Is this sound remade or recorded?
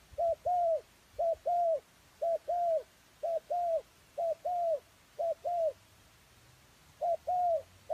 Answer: remade